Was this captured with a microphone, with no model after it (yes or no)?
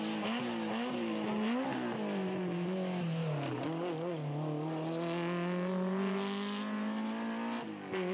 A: yes